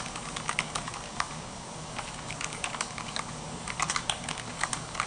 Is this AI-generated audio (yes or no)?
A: yes